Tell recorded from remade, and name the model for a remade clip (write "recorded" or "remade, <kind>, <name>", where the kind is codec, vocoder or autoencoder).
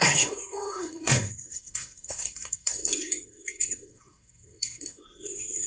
remade, codec, SNAC